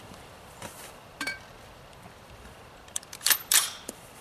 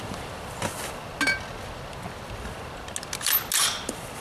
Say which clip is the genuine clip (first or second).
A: second